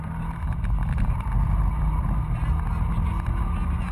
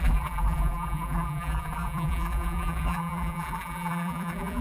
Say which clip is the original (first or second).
first